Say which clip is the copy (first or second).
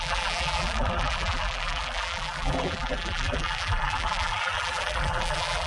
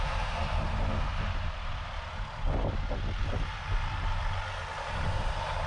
first